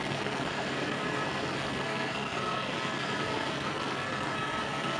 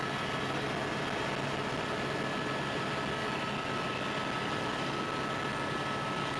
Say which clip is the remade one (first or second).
first